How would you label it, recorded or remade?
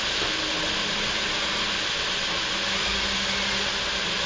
recorded